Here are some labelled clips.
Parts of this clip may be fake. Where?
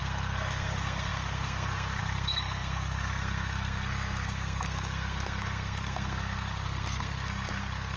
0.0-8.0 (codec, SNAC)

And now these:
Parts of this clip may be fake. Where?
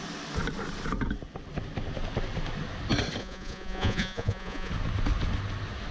3.2-4.7 (vocoder, Vocos)